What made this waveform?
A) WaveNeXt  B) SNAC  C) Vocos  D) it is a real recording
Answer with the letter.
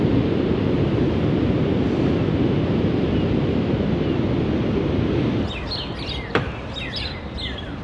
D